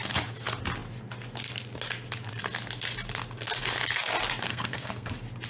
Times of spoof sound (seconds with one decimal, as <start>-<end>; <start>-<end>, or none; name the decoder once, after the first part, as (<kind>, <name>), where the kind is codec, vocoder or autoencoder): 4.5-5.1 (codec, SNAC)